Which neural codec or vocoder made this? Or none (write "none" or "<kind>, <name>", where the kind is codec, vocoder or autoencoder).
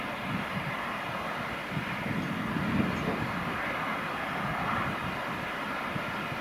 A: none